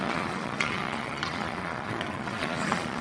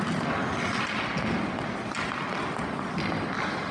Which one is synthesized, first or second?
first